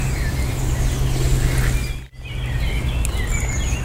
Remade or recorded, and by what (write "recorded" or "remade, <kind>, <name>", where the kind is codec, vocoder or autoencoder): recorded